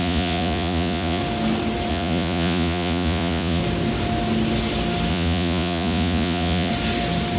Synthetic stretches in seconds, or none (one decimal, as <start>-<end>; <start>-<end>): 0.0-1.2; 1.9-3.6; 5.1-6.7